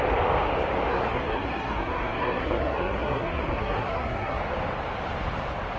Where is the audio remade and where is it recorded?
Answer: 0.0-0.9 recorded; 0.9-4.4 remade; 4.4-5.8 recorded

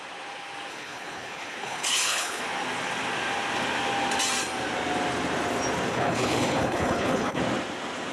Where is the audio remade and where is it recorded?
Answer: 0.0-0.7 recorded; 0.7-2.4 remade; 2.4-5.9 recorded; 5.9-7.4 remade; 7.4-8.1 recorded

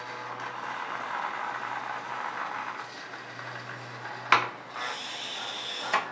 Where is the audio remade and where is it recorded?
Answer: 0.0-6.1 recorded

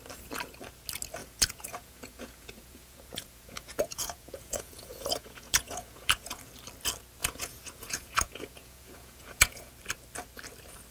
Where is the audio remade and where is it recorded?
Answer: 0.0-1.2 recorded; 1.2-6.4 remade; 6.4-7.2 recorded; 7.2-9.7 remade; 9.7-10.9 recorded

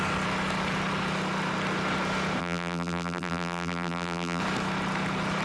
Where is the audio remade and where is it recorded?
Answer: 0.0-2.4 recorded; 2.4-4.4 remade; 4.4-5.4 recorded

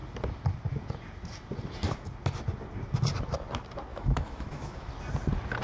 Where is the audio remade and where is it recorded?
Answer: 0.0-3.9 recorded; 3.9-4.9 remade; 4.9-5.6 recorded